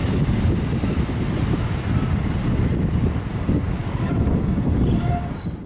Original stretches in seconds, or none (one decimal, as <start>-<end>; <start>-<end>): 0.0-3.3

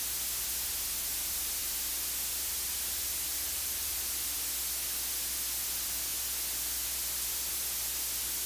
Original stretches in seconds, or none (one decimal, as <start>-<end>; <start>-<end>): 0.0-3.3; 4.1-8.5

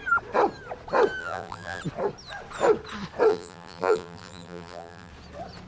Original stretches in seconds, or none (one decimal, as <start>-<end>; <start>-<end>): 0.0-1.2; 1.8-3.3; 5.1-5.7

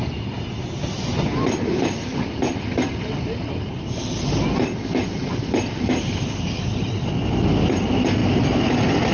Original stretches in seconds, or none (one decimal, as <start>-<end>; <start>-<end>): 0.0-9.1

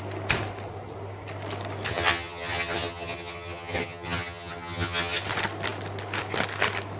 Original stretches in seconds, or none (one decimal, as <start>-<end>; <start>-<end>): 0.0-1.9; 5.2-7.0

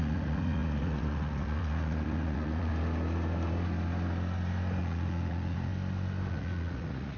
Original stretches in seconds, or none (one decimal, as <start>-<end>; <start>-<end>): 2.7-4.8; 5.7-6.3

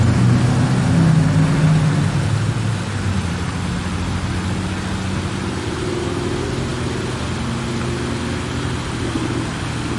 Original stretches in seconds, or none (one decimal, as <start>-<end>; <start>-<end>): 0.0-10.0